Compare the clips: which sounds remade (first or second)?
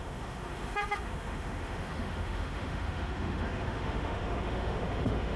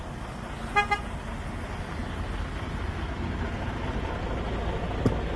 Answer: first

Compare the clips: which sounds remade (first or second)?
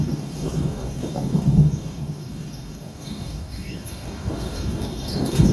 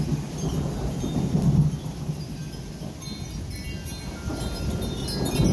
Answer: first